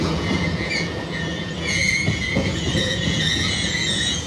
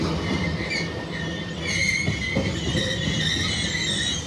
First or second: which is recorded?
second